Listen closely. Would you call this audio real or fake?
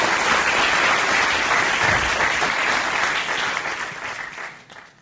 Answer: real